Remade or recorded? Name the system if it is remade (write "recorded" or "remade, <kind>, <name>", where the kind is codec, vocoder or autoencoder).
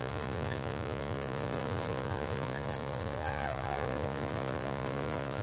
remade, vocoder, Vocos